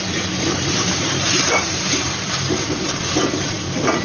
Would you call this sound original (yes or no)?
no